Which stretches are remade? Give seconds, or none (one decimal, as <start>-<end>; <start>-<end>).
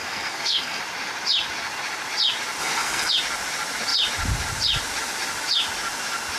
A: 0.0-0.8; 2.6-3.1